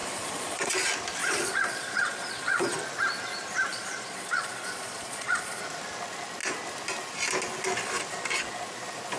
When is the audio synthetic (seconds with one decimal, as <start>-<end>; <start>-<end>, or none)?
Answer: 0.0-0.7; 1.2-2.7; 3.7-5.6